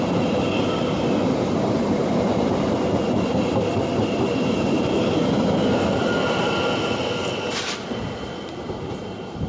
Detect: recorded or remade remade